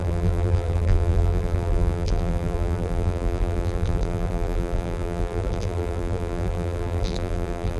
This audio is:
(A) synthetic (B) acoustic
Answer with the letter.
A